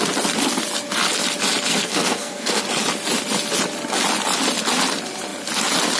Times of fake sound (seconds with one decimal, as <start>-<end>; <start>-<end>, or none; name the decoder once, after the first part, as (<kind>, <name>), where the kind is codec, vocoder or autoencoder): 1.7-2.6 (codec, SNAC)